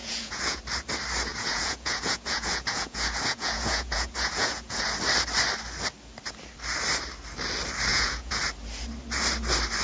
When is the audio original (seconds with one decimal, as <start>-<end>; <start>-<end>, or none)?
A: 0.6-1.3; 4.8-7.9; 8.4-9.8